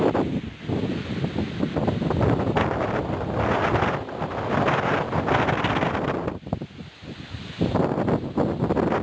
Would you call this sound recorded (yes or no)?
yes